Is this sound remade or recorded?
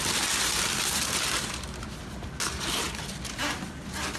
recorded